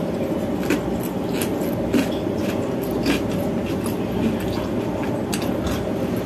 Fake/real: real